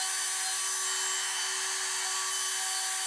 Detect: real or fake real